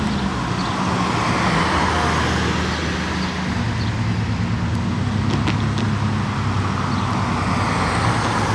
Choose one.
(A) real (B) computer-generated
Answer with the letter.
A